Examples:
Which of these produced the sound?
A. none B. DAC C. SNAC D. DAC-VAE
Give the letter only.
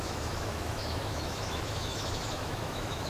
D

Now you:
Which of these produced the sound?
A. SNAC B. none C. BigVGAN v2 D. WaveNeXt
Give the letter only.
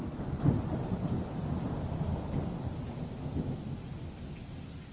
B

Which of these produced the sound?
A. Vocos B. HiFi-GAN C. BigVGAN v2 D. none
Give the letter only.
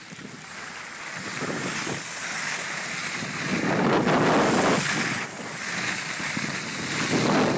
D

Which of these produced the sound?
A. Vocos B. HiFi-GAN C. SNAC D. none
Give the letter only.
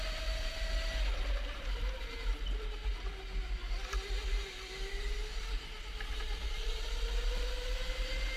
D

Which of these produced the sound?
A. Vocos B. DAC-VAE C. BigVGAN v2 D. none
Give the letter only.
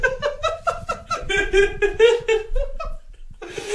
C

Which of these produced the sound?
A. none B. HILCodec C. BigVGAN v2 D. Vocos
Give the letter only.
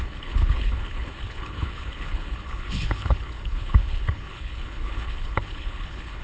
B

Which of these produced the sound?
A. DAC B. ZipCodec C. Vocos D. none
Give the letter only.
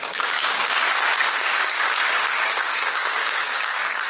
A